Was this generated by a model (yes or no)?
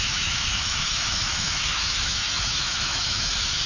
yes